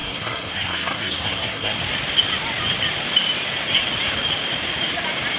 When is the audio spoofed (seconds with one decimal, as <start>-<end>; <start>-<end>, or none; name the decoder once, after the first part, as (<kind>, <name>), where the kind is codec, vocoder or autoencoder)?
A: 0.0-1.8 (codec, SNAC)